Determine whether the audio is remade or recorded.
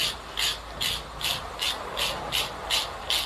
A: recorded